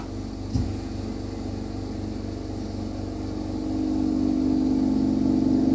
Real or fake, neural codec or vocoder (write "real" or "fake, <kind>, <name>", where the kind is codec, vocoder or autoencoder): real